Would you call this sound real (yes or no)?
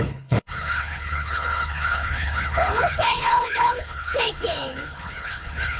no